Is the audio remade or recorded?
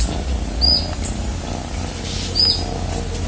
recorded